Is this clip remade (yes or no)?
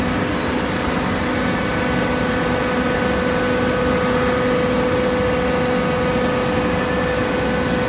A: no